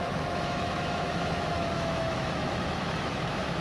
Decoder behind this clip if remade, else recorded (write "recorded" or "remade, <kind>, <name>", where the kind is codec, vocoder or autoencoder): remade, autoencoder, DAC-VAE